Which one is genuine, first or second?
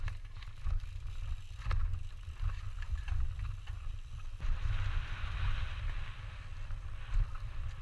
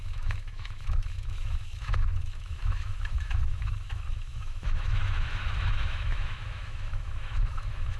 first